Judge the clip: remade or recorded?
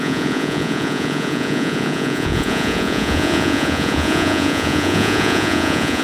remade